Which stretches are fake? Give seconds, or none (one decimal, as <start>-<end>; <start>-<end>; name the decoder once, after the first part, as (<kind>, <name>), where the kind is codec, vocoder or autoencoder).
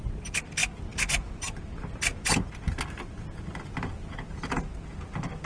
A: none